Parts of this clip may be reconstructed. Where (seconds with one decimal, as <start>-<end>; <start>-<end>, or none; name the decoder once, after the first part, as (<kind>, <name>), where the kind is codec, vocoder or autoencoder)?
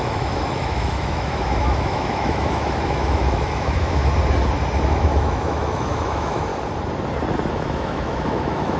0.0-4.0 (autoencoder, DAC-VAE); 4.8-6.5; 7.5-8.8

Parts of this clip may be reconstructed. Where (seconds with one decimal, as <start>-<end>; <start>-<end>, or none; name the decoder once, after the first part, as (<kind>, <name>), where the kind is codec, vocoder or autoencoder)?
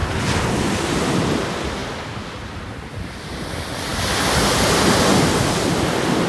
none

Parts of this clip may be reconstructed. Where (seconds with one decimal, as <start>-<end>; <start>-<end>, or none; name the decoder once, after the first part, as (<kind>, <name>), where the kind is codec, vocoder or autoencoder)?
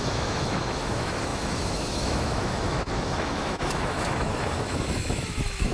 0.0-5.7 (autoencoder, DAC-VAE)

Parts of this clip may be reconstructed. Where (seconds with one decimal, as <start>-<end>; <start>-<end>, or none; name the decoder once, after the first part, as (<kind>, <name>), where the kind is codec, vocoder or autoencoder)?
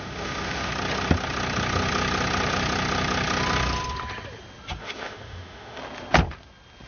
0.0-0.7 (autoencoder, DAC-VAE); 4.8-5.8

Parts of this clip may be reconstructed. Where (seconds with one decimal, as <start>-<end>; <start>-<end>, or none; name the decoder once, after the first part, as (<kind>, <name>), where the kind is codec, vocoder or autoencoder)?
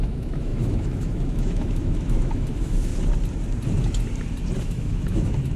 0.0-2.9 (autoencoder, DAC-VAE); 4.6-5.6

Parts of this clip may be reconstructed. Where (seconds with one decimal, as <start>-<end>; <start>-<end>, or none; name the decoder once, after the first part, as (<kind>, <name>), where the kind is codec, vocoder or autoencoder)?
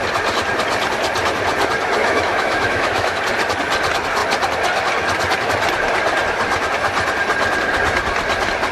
2.0-3.2 (autoencoder, DAC-VAE)